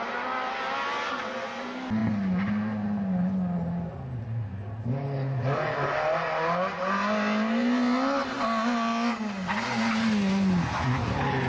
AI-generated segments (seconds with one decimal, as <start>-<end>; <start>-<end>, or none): none